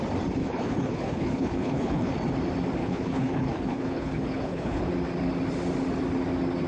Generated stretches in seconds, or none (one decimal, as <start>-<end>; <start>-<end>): 0.4-2.1; 2.8-4.8

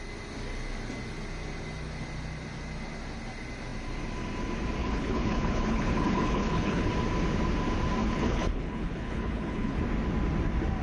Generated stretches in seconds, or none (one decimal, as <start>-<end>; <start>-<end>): 4.8-6.9; 8.0-9.8